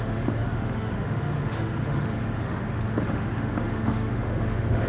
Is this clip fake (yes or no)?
yes